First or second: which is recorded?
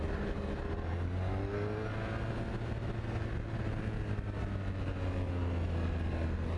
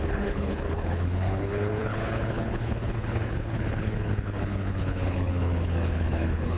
first